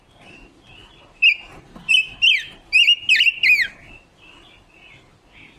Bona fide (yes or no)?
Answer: yes